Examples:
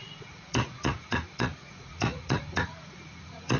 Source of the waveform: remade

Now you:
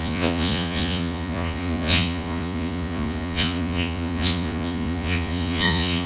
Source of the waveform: remade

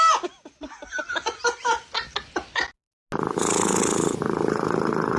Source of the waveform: recorded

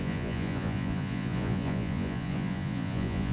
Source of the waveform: remade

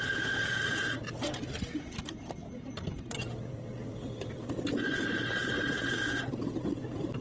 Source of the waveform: recorded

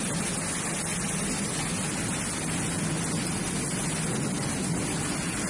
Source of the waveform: recorded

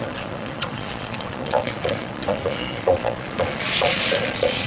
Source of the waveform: remade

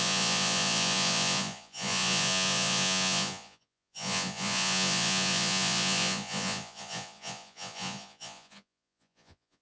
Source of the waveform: remade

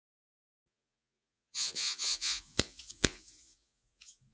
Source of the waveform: remade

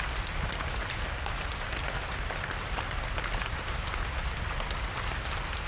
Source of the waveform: recorded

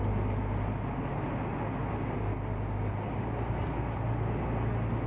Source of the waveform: recorded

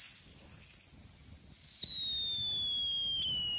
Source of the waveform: recorded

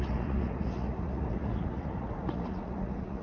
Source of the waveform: remade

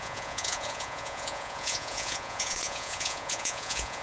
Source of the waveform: remade